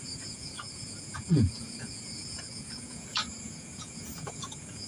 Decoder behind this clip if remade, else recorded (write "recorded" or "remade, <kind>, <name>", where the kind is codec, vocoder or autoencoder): remade, vocoder, Vocos